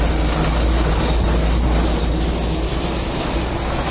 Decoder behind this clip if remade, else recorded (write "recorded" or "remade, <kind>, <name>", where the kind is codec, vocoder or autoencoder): recorded